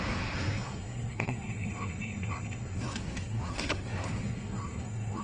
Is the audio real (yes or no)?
no